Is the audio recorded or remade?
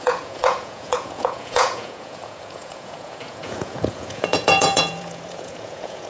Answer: remade